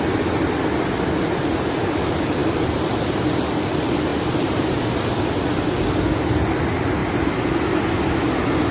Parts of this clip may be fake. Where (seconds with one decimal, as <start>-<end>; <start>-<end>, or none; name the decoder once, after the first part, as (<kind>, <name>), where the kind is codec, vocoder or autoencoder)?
2.4-3.0 (vocoder, BigVGAN v2); 4.1-5.4; 7.0-7.6

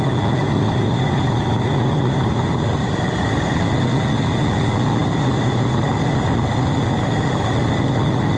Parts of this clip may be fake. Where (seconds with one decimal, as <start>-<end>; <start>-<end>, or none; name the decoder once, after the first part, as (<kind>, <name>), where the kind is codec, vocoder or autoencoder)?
0.4-3.5 (vocoder, BigVGAN v2); 5.0-5.9

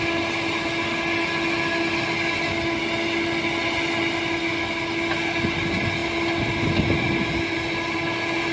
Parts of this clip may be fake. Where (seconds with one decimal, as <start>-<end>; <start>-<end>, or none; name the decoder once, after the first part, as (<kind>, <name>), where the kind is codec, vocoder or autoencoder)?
none

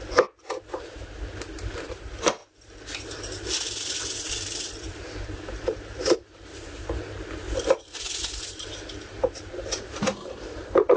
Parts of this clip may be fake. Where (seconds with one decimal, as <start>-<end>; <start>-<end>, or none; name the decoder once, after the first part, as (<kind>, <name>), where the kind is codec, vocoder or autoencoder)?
0.0-7.9 (vocoder, BigVGAN v2); 9.4-11.0

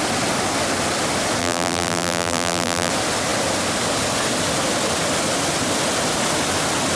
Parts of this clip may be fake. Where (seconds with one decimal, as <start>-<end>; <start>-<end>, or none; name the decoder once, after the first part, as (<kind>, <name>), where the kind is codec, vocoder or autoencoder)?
1.4-2.9 (vocoder, BigVGAN v2)

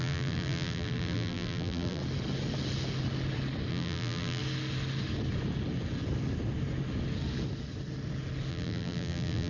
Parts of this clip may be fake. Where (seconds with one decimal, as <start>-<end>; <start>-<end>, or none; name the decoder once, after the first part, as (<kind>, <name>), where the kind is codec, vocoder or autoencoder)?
0.0-2.0 (vocoder, BigVGAN v2); 3.7-4.4; 8.5-9.5

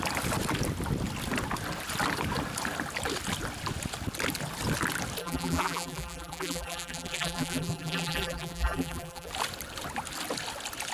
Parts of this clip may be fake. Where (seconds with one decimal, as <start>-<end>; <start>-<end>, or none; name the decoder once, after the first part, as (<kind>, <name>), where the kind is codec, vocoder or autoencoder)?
5.2-9.3 (vocoder, BigVGAN v2)

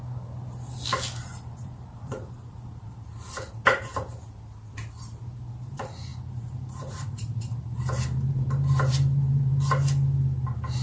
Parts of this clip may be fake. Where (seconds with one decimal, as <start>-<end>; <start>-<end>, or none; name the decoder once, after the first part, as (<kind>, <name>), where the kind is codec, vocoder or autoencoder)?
1.3-2.9 (vocoder, BigVGAN v2); 6.1-9.6